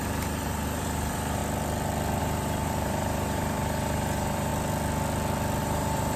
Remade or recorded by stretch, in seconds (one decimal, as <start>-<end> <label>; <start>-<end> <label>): 0.0-1.4 remade; 1.4-2.2 recorded; 2.2-4.5 remade; 4.5-5.6 recorded; 5.6-6.2 remade